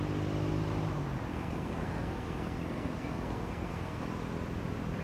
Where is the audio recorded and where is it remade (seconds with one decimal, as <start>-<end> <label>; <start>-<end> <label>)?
0.0-1.3 recorded; 1.3-4.0 remade; 4.0-5.0 recorded